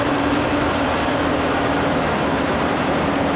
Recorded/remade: remade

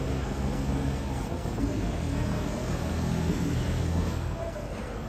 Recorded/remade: remade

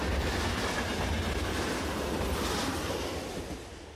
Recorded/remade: recorded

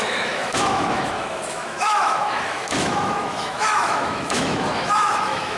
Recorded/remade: remade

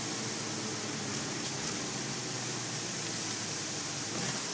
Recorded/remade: recorded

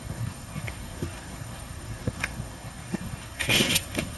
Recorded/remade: remade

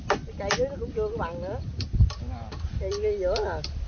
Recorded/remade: recorded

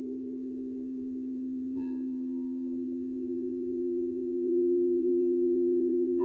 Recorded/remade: remade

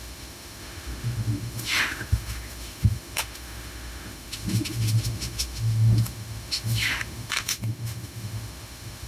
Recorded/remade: remade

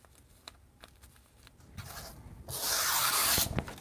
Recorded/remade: recorded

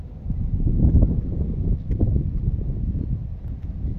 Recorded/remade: recorded